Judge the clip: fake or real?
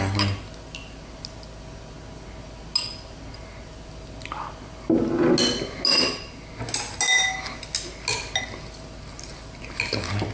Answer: real